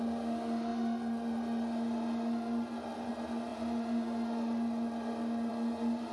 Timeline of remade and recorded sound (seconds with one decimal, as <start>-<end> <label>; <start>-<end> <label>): 0.0-6.1 recorded